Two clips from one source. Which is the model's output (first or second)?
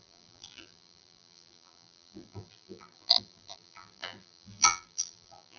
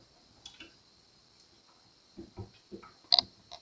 first